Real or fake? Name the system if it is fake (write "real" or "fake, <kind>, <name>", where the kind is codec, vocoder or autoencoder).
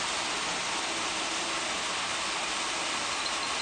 real